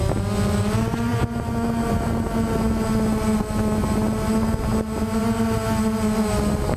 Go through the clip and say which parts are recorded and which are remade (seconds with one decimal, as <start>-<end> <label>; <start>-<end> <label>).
0.0-6.8 recorded